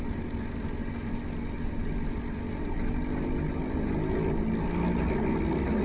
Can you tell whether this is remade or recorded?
recorded